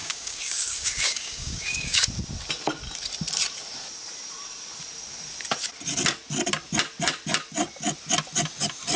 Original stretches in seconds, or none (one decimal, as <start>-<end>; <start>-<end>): 2.1-9.0